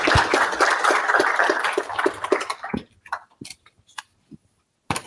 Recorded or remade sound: recorded